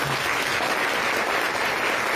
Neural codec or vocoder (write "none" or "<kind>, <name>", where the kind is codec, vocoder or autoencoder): none